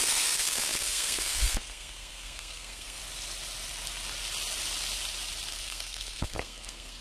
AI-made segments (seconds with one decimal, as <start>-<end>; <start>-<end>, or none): 0.0-3.0; 5.5-7.0